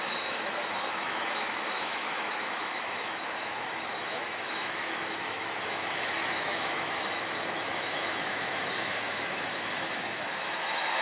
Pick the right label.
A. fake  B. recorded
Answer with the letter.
A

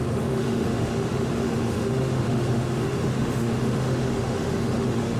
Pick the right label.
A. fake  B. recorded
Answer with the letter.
A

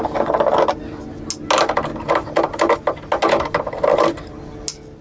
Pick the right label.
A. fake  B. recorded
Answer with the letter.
B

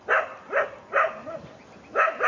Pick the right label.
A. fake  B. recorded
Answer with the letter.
B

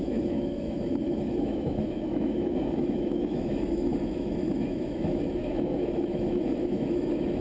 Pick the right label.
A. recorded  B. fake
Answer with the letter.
B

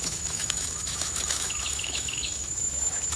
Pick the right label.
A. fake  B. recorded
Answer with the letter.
A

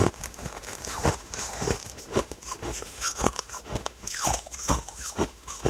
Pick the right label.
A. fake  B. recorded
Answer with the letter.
A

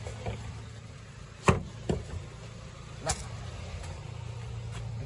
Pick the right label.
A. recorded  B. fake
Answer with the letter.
A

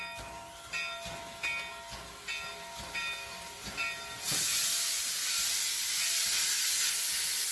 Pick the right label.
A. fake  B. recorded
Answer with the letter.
B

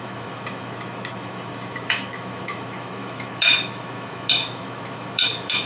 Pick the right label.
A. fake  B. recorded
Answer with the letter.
A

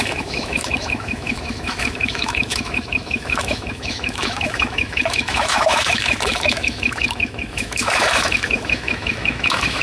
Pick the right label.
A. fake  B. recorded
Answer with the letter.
A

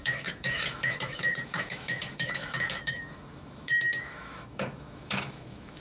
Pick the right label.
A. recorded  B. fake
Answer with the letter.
B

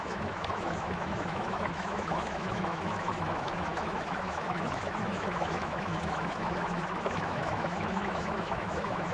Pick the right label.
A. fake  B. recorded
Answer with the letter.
A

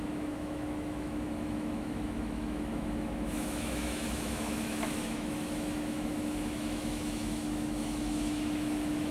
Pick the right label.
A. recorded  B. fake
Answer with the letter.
B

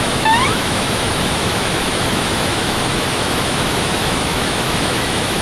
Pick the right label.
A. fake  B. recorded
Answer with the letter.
A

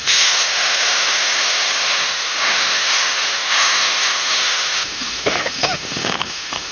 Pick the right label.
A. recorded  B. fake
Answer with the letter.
B